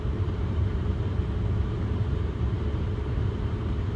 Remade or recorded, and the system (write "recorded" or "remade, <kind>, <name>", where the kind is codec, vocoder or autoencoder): remade, vocoder, BigVGAN v2